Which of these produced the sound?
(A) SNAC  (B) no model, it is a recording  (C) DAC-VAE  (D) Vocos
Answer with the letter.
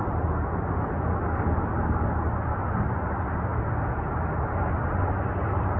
B